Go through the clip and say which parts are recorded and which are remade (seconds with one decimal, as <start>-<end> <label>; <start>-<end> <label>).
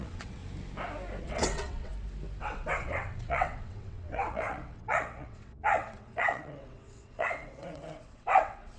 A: 0.0-0.4 remade; 0.4-1.2 recorded; 1.2-1.9 remade; 1.9-2.4 recorded; 2.4-8.8 remade